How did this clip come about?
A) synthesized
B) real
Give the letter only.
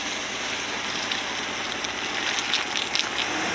B